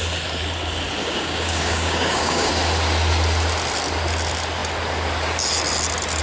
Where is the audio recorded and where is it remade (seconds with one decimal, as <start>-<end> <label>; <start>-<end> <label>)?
0.0-1.0 recorded; 1.0-2.5 remade; 2.5-6.2 recorded